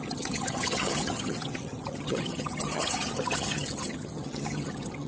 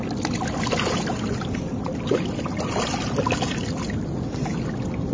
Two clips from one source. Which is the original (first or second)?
second